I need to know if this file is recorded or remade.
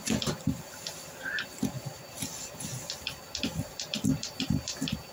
remade